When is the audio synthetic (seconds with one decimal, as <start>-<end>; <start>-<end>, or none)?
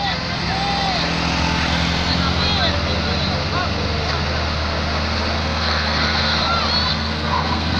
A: 5.4-6.4; 6.9-7.8